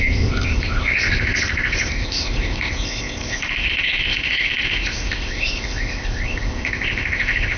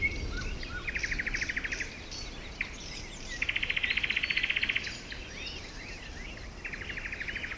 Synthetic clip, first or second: first